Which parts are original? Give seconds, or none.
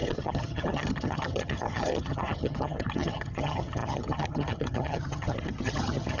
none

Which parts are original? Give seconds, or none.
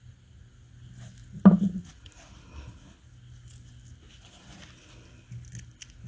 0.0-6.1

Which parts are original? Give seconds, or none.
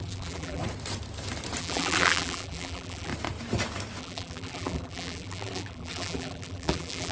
0.6-1.6; 3.1-4.0